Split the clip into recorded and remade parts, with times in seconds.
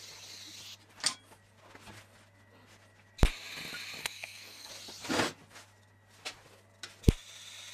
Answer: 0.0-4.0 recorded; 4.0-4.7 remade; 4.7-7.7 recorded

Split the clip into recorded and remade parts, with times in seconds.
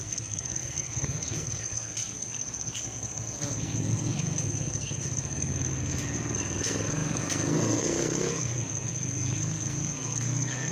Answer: 0.0-10.7 remade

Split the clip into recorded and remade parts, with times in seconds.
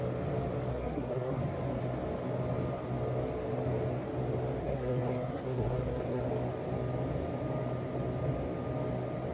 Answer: 0.0-0.7 recorded; 0.7-1.4 remade; 1.4-4.6 recorded; 4.6-6.2 remade; 6.2-9.3 recorded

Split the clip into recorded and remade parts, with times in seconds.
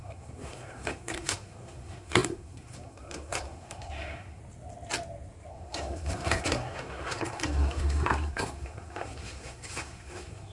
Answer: 0.0-4.4 remade; 4.4-5.5 recorded; 5.5-10.5 remade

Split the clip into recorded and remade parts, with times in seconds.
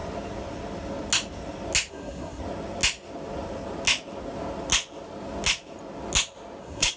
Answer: 0.0-1.9 recorded; 1.9-2.4 remade; 2.4-6.6 recorded; 6.6-7.0 remade